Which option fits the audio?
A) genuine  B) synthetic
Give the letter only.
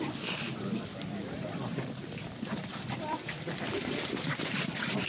A